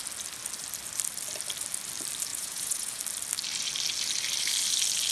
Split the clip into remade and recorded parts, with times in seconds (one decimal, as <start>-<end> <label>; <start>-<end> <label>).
0.0-2.3 recorded; 2.3-3.0 remade; 3.0-5.1 recorded